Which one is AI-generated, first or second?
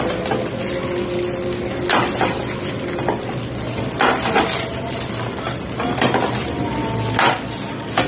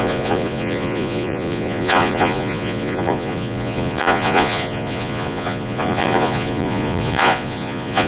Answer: second